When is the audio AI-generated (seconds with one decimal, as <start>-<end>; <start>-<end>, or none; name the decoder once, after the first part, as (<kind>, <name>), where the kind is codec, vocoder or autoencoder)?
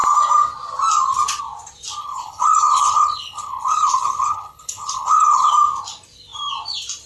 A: 2.0-5.5 (codec, HILCodec)